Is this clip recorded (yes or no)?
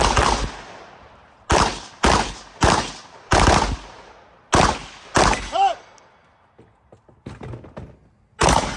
yes